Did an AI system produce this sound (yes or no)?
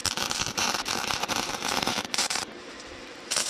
yes